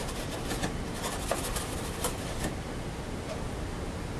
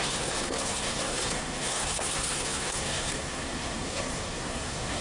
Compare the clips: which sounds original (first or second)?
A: first